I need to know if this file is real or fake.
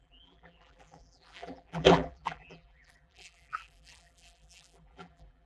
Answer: fake